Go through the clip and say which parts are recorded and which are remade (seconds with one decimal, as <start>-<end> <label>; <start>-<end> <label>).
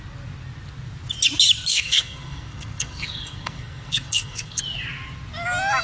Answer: 0.0-1.7 recorded; 1.7-4.6 remade; 4.6-5.8 recorded